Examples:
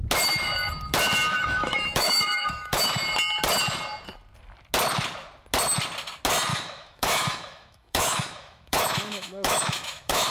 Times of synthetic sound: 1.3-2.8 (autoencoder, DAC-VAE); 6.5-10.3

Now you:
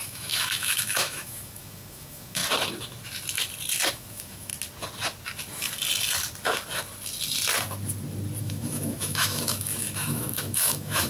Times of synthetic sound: 0.0-2.4 (autoencoder, DAC-VAE); 3.9-4.5; 8.4-11.1

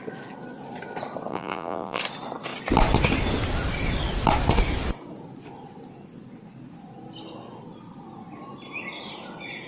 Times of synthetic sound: 1.3-2.0 (vocoder, BigVGAN v2)

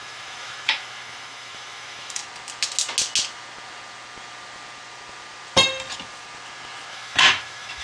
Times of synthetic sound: 0.0-2.2 (autoencoder, DAC-VAE); 6.9-7.8

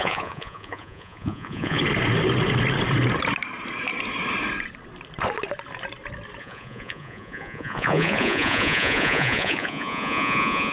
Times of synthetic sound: 0.0-1.8 (vocoder, Vocos); 6.4-10.7

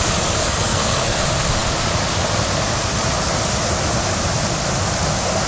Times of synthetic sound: 0.4-1.2 (codec, SNAC)

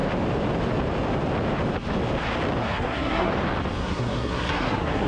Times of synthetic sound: 2.6-3.3 (codec, SNAC); 3.8-5.1

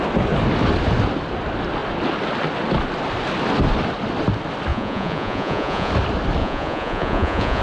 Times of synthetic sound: 4.7-5.9 (vocoder, Vocos); 6.4-7.6